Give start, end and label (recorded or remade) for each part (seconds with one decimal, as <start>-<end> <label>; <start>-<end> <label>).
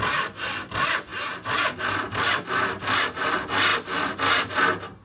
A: 0.0-5.0 recorded